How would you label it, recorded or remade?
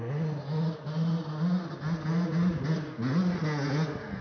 recorded